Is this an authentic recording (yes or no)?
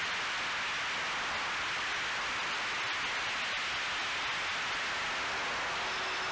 yes